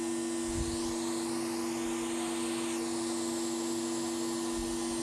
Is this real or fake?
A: real